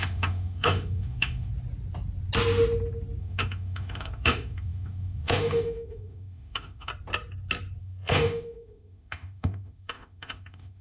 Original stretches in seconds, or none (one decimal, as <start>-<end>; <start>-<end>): 1.5-3.2; 6.9-7.8